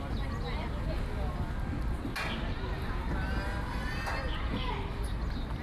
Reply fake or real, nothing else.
real